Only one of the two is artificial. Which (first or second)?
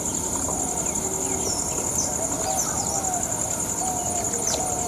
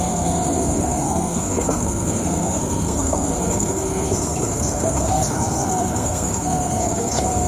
second